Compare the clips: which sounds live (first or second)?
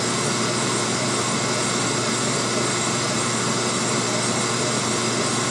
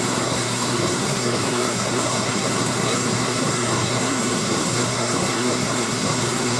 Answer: first